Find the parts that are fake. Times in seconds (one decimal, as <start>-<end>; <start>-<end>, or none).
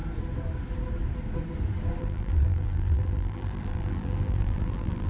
2.0-5.1